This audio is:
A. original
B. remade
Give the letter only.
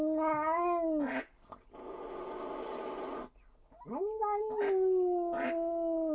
A